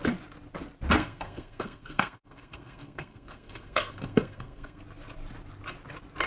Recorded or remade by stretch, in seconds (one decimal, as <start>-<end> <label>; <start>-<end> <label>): 0.0-1.0 recorded; 1.0-4.8 remade; 4.8-6.3 recorded